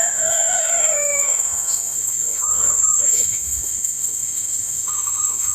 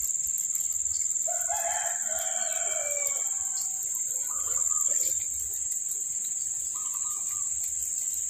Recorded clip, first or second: second